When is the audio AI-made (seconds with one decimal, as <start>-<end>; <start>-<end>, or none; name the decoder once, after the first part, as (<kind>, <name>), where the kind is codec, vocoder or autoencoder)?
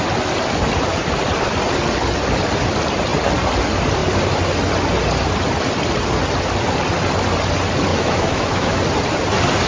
7.9-8.8 (autoencoder, DAC-VAE)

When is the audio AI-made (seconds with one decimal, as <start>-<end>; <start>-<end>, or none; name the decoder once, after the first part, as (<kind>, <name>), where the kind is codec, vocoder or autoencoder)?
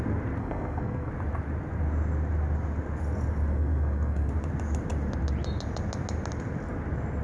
0.4-1.1 (codec, SNAC); 3.5-4.3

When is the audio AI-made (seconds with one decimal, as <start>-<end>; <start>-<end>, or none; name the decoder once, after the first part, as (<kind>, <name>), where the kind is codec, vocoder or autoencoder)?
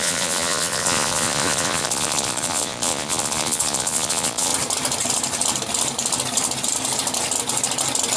0.0-4.5 (vocoder, Vocos)